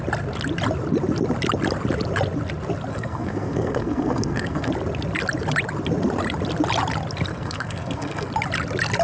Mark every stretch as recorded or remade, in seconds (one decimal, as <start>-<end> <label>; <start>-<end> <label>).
0.0-2.9 recorded; 2.9-4.7 remade; 4.7-7.3 recorded; 7.3-8.3 remade; 8.3-9.0 recorded